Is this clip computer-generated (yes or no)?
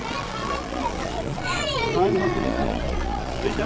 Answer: yes